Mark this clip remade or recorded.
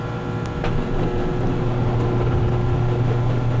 recorded